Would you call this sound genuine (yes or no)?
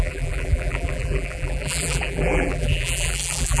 no